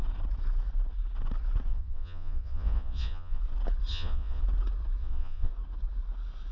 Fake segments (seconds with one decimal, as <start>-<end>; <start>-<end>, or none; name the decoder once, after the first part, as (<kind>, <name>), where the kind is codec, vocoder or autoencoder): 1.7-3.4 (vocoder, Vocos); 3.9-4.4; 5.0-5.5